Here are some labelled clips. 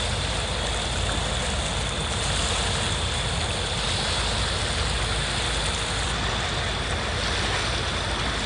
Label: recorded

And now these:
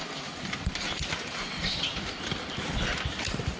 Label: remade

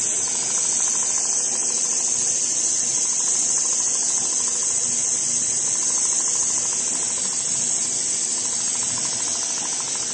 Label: recorded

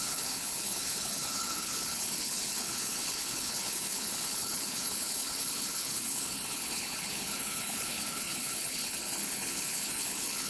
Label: remade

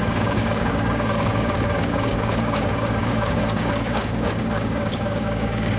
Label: remade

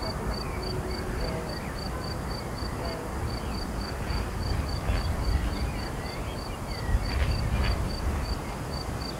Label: recorded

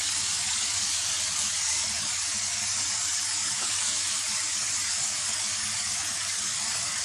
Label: remade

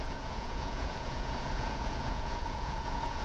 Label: remade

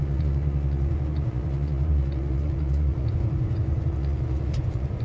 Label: remade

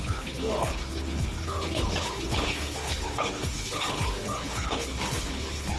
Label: remade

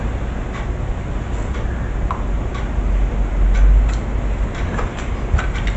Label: recorded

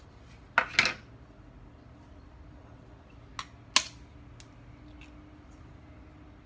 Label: recorded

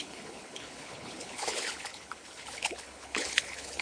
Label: remade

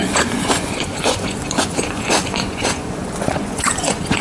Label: remade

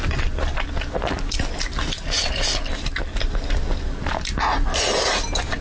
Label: recorded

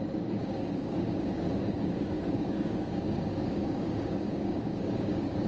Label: remade